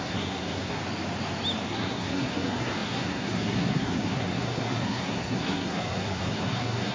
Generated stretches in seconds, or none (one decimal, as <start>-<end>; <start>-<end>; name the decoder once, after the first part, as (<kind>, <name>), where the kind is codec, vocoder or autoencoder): 0.0-0.8 (codec, SNAC); 1.7-6.9